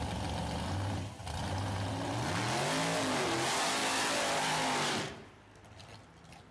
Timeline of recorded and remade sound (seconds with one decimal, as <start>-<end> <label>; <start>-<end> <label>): 0.0-6.5 recorded